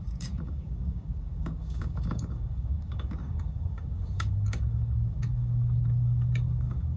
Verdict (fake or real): fake